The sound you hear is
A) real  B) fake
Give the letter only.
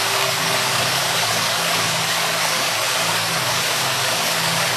B